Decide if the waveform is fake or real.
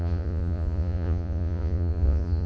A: fake